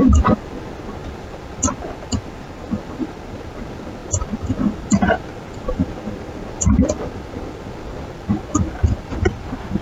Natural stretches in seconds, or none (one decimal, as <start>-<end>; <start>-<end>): 0.0-9.8